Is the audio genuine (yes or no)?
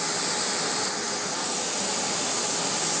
yes